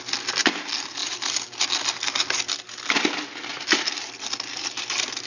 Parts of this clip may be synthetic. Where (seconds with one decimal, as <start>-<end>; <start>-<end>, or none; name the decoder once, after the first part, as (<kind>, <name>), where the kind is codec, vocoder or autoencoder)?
3.5-4.3 (vocoder, BigVGAN v2)

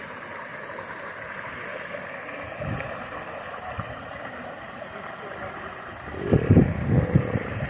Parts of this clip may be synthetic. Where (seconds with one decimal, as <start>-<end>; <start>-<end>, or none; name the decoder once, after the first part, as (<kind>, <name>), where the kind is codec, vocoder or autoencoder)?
0.0-0.5 (vocoder, BigVGAN v2); 1.1-1.7; 2.4-7.7

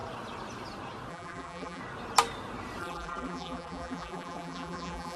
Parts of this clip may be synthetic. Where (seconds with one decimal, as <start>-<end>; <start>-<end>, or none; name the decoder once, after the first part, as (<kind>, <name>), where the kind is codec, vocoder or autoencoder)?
1.1-1.8 (vocoder, BigVGAN v2); 2.8-5.2